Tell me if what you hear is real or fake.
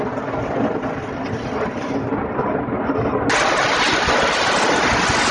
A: real